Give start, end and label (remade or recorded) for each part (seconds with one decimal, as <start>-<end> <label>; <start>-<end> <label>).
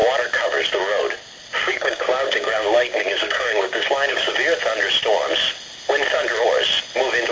0.0-1.6 recorded; 1.6-4.3 remade; 4.3-7.3 recorded